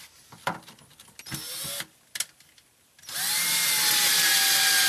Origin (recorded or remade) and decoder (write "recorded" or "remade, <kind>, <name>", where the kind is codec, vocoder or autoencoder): recorded